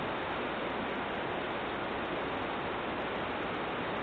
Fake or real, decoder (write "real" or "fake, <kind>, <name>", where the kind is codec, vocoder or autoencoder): real